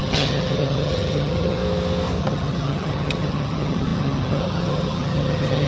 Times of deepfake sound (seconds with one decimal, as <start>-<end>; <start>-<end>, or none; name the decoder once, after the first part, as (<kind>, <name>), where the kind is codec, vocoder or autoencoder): 0.0-1.6 (vocoder, HiFi-GAN); 2.2-5.7